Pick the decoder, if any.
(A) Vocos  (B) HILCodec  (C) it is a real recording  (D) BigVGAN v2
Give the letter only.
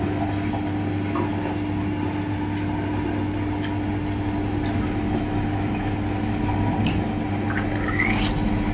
C